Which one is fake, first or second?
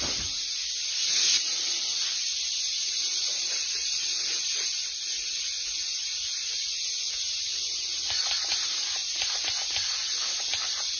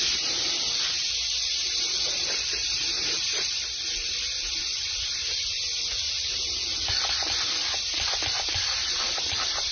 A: second